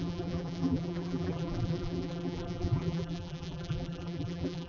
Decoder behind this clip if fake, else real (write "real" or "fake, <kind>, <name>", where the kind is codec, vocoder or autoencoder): fake, vocoder, BigVGAN v2